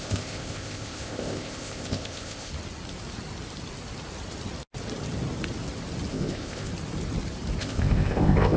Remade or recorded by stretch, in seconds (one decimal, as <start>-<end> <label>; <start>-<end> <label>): 0.0-2.5 remade; 2.5-6.1 recorded; 6.1-6.7 remade; 6.7-7.6 recorded; 7.6-8.6 remade